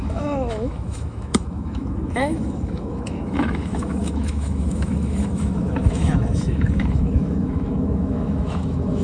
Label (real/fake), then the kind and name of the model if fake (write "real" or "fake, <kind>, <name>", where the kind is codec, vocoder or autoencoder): fake, autoencoder, DAC-VAE